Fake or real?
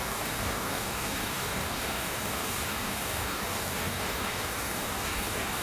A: fake